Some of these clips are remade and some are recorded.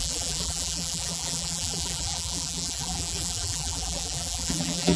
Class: remade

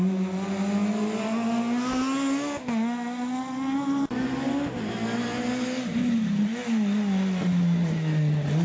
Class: recorded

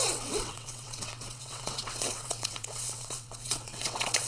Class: remade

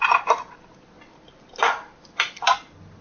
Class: recorded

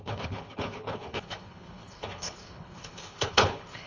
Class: remade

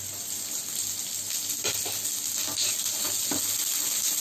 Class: recorded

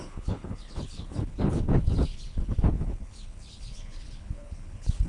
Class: remade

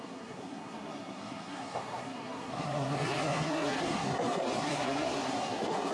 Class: remade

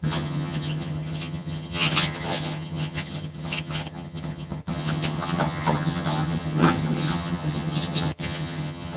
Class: remade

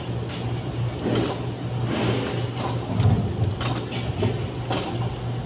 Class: recorded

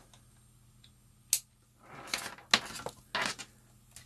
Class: recorded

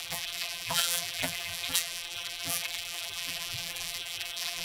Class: remade